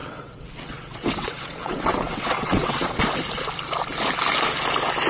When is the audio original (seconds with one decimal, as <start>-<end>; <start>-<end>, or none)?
3.0-5.1